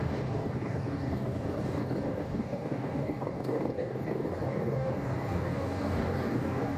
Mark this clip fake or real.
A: fake